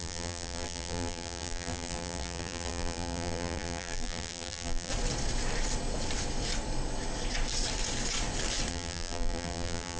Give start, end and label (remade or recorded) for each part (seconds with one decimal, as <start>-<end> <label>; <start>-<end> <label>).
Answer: 0.0-4.9 remade; 4.9-8.7 recorded; 8.7-10.0 remade